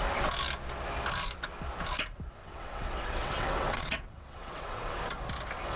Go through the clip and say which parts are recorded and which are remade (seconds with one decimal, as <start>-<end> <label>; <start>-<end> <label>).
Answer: 0.0-2.4 recorded; 2.4-4.9 remade; 4.9-5.8 recorded